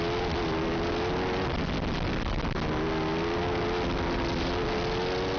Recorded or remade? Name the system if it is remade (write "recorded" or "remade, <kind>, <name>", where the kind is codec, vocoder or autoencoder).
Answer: recorded